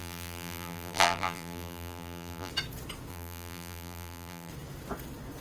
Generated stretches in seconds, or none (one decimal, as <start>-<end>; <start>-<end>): 0.0-2.5; 3.1-4.5